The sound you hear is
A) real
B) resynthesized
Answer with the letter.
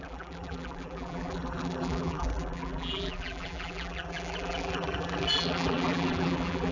B